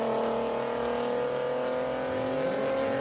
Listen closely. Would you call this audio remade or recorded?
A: recorded